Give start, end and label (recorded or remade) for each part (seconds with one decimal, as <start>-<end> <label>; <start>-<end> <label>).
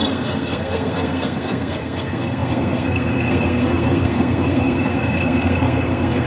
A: 0.0-6.3 remade